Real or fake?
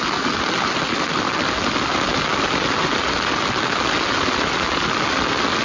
real